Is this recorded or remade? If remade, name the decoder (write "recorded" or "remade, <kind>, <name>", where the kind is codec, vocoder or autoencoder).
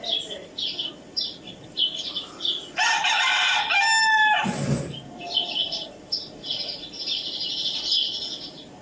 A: recorded